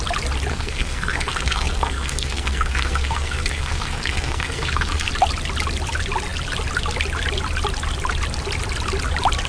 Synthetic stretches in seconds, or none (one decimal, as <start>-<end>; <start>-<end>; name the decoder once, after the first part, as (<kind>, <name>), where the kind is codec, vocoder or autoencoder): 0.5-5.1 (codec, SNAC)